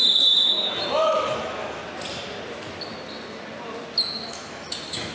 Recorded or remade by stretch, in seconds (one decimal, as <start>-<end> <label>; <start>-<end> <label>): 0.0-1.8 remade; 1.8-4.3 recorded; 4.3-5.1 remade